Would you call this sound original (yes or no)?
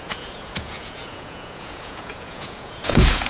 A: no